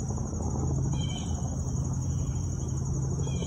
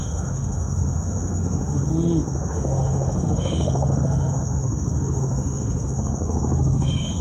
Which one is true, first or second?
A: first